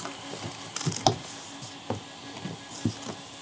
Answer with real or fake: real